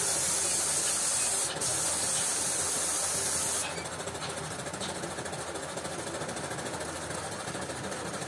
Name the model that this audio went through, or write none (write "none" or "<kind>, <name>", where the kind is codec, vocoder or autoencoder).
none